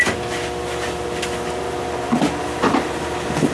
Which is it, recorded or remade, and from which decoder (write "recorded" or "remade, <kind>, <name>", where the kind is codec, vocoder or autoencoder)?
recorded